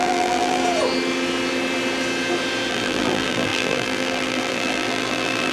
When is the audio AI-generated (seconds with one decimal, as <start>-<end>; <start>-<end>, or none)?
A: 0.0-0.6; 2.7-5.5